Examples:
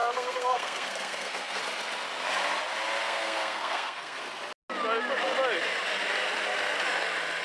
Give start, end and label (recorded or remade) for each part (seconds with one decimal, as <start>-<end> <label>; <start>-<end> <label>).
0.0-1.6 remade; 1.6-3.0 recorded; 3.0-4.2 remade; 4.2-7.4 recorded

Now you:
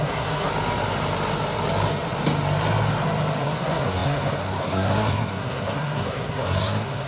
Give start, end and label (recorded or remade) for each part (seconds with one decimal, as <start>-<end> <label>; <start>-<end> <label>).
0.0-0.5 remade; 0.5-3.4 recorded; 3.4-7.1 remade

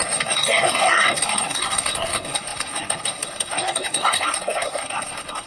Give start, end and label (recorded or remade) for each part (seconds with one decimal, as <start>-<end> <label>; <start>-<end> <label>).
0.0-5.5 remade

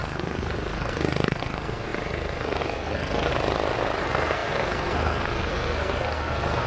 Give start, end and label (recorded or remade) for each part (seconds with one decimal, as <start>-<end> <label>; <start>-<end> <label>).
0.0-3.3 remade; 3.3-4.0 recorded; 4.0-6.7 remade

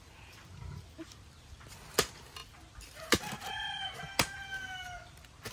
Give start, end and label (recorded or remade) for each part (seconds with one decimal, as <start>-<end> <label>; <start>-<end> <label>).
0.0-5.5 recorded

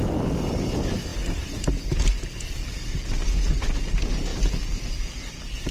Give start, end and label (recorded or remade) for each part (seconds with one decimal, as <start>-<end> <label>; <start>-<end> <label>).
0.0-5.7 recorded

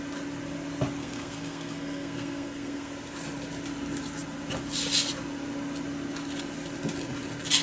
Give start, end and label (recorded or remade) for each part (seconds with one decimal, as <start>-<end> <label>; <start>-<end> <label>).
0.0-1.0 recorded; 1.0-2.9 remade; 2.9-7.6 recorded